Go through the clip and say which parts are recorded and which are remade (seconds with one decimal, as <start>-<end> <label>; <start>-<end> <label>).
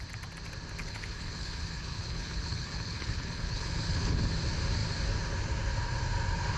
0.0-0.8 recorded; 0.8-4.2 remade; 4.2-6.6 recorded